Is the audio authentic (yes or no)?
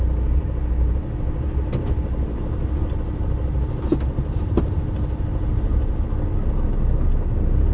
yes